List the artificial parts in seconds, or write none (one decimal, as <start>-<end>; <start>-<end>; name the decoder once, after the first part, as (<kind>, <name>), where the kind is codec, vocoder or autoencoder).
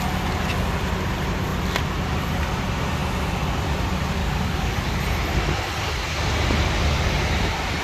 4.2-5.0 (codec, DAC)